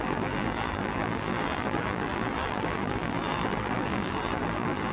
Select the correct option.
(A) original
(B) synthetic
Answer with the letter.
B